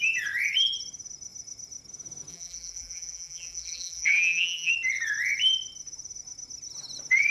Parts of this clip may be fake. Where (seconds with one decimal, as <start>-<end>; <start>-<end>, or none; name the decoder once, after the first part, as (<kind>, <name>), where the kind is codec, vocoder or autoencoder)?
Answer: 2.3-4.7 (vocoder, BigVGAN v2)